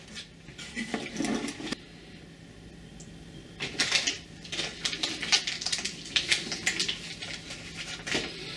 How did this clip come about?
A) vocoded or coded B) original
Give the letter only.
B